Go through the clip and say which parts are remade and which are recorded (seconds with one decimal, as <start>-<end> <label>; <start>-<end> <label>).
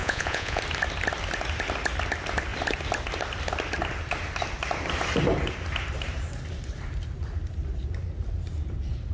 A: 0.0-0.6 remade; 0.6-9.1 recorded